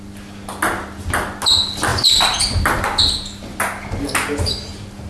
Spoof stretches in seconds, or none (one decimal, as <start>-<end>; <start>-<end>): none